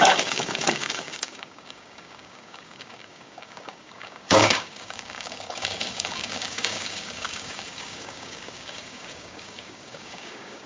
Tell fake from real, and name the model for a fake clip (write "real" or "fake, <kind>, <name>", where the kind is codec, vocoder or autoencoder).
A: fake, codec, DAC